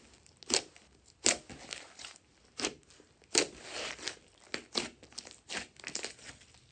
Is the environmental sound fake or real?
real